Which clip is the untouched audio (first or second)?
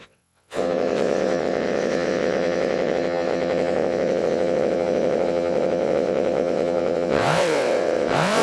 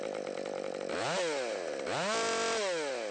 second